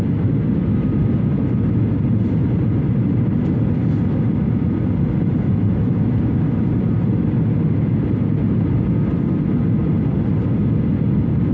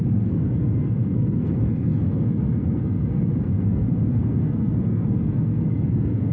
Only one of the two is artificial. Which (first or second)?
second